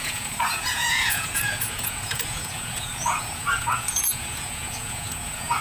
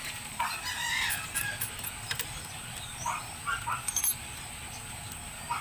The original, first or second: second